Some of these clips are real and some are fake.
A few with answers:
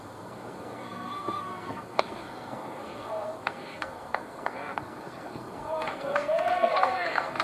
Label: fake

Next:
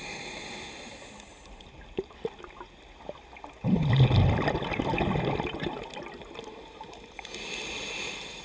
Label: real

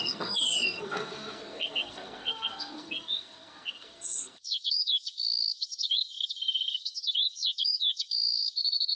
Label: fake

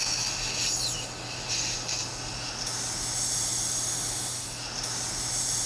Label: real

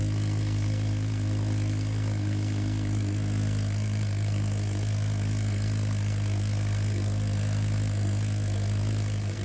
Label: fake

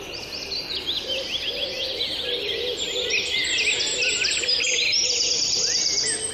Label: real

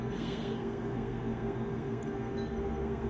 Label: fake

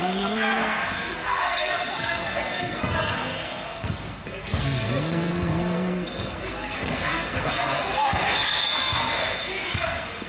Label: fake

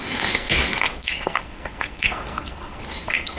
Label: fake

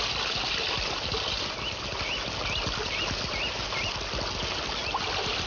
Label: real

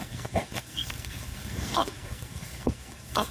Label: fake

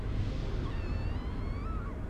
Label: real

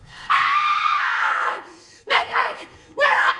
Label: fake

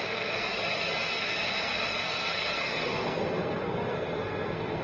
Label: fake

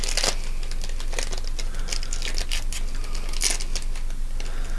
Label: real